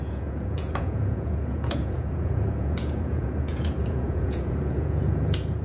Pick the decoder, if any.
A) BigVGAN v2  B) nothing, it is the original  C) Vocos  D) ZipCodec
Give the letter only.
C